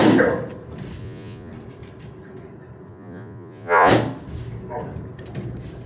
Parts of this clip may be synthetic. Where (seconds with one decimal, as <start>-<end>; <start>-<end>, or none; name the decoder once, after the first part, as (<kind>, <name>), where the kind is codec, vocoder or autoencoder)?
1.0-1.5 (vocoder, Vocos); 2.9-3.9